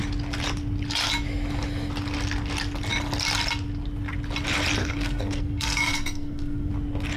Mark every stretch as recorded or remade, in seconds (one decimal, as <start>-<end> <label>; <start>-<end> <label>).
0.0-4.8 recorded; 4.8-6.7 remade; 6.7-7.2 recorded